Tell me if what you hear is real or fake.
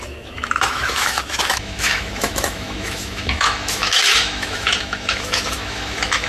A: fake